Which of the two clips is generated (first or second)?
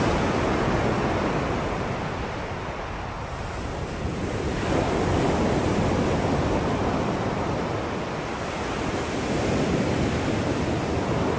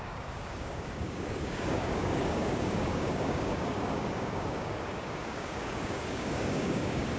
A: second